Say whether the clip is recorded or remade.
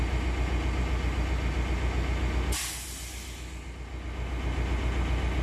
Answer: recorded